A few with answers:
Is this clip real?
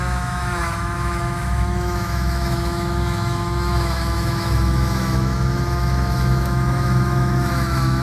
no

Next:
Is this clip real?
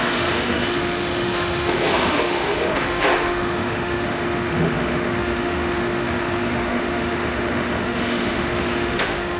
no